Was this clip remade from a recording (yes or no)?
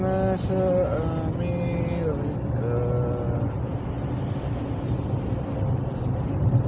no